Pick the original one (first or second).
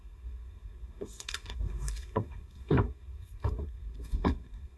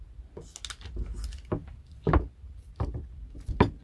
second